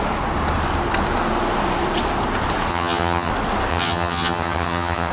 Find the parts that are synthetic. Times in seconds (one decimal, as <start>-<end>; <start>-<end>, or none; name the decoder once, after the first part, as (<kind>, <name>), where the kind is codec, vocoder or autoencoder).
2.7-3.3 (vocoder, HiFi-GAN); 3.7-5.1